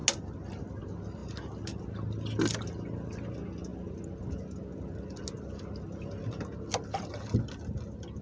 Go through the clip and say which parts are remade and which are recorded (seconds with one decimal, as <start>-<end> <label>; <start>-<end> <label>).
0.0-8.2 recorded